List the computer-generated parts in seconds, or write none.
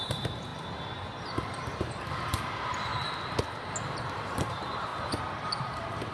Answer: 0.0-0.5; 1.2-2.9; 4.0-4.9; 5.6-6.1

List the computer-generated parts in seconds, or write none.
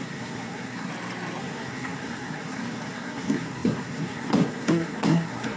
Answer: 0.0-0.9; 1.4-5.6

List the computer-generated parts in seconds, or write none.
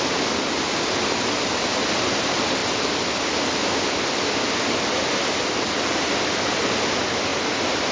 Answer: none